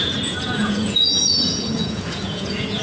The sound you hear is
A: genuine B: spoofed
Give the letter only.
B